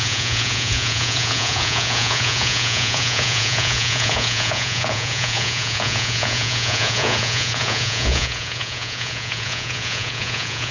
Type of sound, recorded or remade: remade